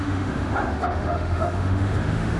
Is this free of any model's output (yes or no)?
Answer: no